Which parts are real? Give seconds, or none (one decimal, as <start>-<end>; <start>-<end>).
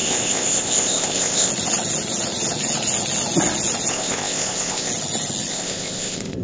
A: 1.5-3.9; 4.9-5.5